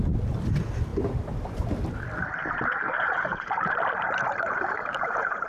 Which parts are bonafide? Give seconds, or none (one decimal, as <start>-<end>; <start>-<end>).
0.0-0.9; 1.9-3.3

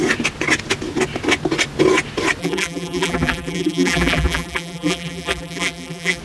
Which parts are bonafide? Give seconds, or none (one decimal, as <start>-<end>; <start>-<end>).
0.0-2.4

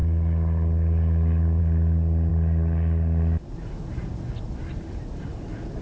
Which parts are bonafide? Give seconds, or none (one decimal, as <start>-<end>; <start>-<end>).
0.0-5.8

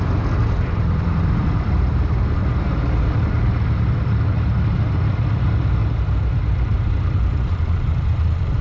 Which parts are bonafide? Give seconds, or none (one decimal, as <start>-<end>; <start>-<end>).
5.8-6.4

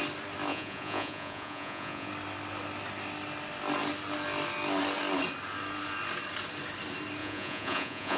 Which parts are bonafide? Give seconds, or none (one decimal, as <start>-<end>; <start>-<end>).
0.0-0.5; 2.1-7.2